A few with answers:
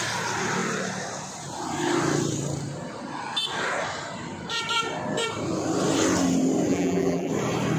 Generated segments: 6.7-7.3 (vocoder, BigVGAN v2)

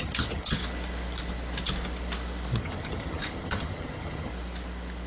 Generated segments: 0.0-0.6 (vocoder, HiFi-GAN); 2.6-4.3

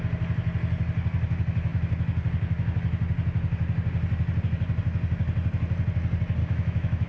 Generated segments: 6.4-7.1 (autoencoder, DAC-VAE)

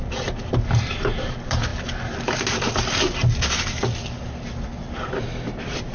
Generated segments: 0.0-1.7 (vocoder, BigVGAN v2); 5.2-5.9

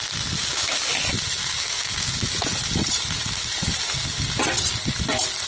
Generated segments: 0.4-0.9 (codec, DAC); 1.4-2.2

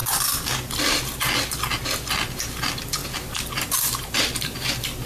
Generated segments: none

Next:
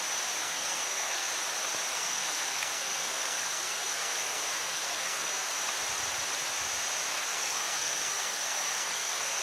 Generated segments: 0.4-1.3 (codec, SNAC); 1.9-5.6; 7.1-9.4